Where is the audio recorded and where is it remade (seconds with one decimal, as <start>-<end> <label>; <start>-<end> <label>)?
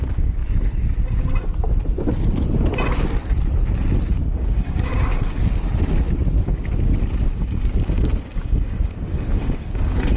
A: 0.0-0.4 remade; 0.4-4.2 recorded; 4.2-5.4 remade; 5.4-7.3 recorded; 7.3-10.2 remade